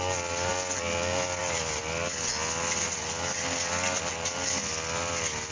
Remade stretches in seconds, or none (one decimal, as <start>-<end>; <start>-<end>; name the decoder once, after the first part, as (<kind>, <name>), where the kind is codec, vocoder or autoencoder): none